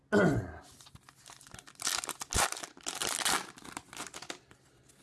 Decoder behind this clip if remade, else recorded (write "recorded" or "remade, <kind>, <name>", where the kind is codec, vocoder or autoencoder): recorded